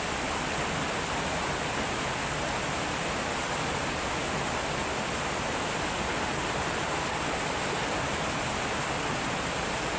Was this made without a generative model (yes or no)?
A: yes